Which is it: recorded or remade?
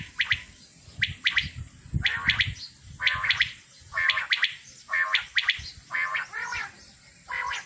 recorded